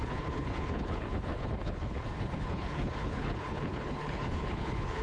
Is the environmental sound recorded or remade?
remade